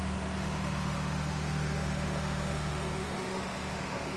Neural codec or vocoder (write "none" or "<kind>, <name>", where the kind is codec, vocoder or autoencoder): autoencoder, DAC-VAE